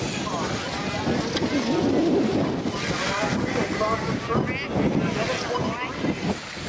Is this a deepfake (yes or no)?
no